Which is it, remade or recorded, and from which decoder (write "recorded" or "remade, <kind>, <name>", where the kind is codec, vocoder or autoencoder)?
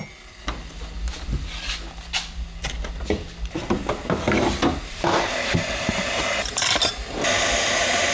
recorded